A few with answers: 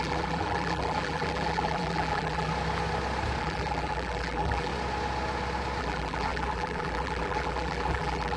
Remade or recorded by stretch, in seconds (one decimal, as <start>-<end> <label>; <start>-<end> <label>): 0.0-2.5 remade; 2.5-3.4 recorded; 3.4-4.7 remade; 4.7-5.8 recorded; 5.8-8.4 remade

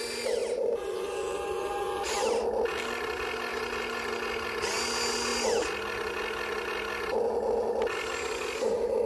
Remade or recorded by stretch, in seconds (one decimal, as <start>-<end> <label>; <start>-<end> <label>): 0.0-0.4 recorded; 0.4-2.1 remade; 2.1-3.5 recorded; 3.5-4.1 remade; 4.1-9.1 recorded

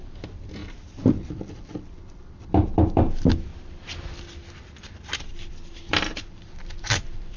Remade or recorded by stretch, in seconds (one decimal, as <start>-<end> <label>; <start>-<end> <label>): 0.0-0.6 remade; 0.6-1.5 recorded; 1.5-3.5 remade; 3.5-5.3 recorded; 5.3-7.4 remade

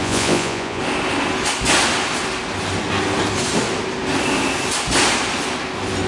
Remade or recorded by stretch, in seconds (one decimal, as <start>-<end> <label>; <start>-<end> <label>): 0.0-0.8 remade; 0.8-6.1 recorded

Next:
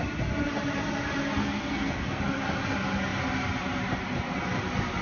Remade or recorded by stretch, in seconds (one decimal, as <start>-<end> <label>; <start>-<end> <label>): 0.0-1.4 recorded; 1.4-2.2 remade; 2.2-5.0 recorded

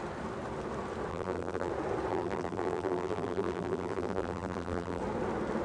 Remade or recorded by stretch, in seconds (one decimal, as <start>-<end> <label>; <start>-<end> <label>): 0.0-1.1 recorded; 1.1-1.7 remade; 1.7-2.1 recorded; 2.1-5.0 remade; 5.0-5.6 recorded

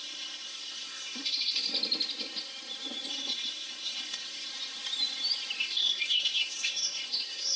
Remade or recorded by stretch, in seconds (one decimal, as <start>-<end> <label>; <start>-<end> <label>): 0.0-1.7 remade; 1.7-3.1 recorded; 3.1-4.5 remade; 4.5-5.6 recorded; 5.6-7.6 remade